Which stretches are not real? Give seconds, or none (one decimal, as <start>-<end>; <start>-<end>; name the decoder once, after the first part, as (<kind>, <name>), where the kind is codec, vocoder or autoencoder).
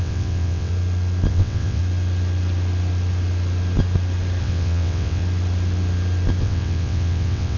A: 0.0-0.7 (vocoder, WaveNeXt); 1.3-1.8; 4.4-5.2; 6.4-7.6